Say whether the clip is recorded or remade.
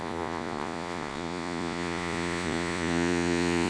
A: remade